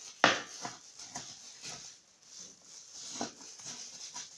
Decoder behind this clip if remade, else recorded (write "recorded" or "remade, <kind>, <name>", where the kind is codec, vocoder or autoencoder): recorded